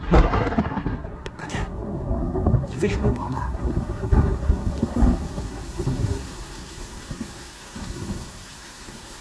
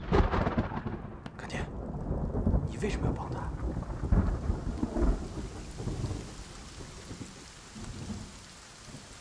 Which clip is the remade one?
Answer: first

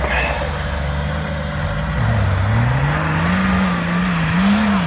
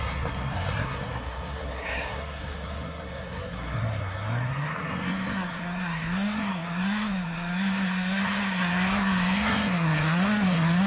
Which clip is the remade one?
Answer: second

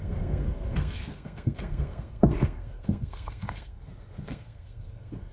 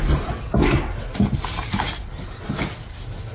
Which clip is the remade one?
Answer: first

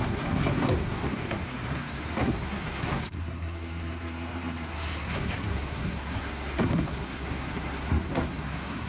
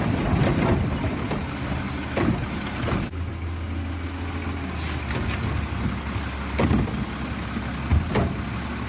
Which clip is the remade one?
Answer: first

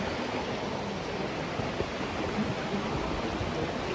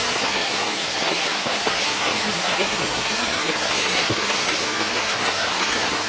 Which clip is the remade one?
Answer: second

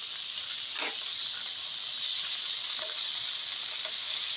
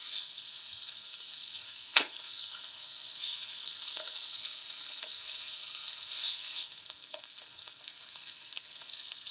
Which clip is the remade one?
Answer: second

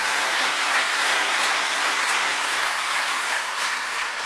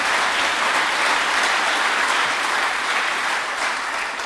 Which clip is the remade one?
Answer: first